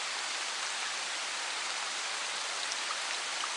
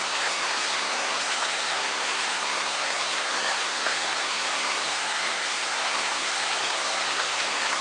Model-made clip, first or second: second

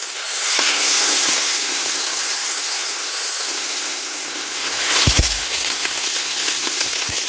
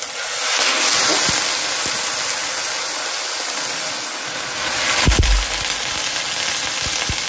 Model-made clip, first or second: first